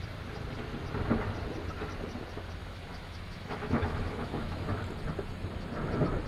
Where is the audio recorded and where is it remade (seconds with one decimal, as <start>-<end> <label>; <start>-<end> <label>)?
0.0-2.6 recorded; 2.6-4.7 remade; 4.7-6.3 recorded